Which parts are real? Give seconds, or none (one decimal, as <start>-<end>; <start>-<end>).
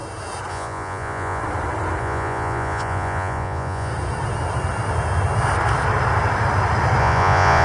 0.0-0.5; 1.4-2.0; 3.9-7.0